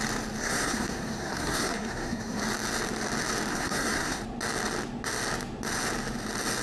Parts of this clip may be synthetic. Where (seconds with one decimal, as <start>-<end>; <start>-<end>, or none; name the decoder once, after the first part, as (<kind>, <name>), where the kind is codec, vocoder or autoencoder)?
0.4-2.4 (codec, SNAC); 3.5-4.2